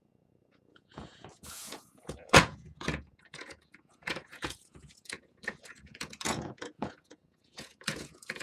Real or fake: fake